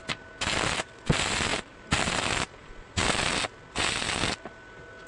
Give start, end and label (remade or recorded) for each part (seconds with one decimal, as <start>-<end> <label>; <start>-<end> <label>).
0.0-1.5 recorded; 1.5-2.1 remade; 2.1-2.6 recorded; 2.6-3.2 remade; 3.2-5.1 recorded